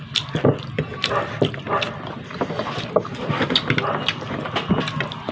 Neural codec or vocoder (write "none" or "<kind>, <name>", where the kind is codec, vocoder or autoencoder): none